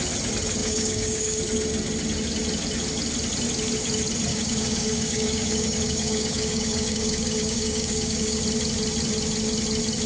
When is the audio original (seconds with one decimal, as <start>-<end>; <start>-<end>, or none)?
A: 0.0-0.6; 1.4-4.3; 8.4-10.1